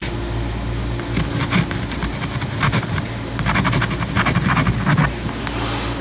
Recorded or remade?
recorded